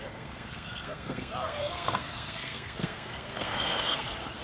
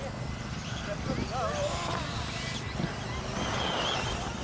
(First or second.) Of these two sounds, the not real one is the first